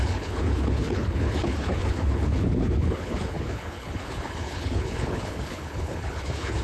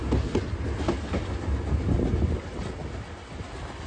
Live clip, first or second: second